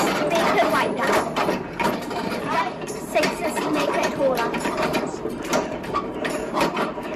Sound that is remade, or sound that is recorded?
remade